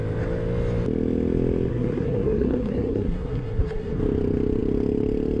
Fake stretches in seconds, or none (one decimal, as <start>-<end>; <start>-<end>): 1.7-4.0